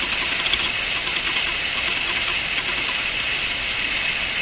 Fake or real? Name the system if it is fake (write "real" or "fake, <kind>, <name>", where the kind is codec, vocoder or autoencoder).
real